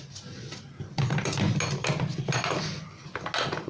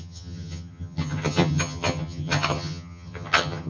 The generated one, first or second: second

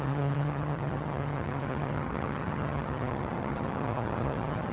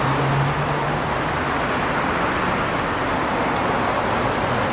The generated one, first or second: first